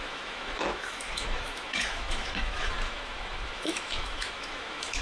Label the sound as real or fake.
fake